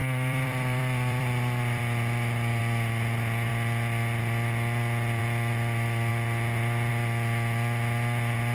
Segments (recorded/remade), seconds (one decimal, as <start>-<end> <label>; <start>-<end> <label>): 0.0-2.6 remade; 2.6-8.5 recorded